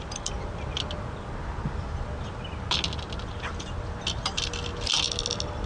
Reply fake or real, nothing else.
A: real